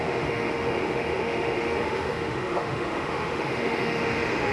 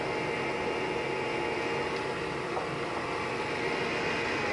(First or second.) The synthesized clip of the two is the first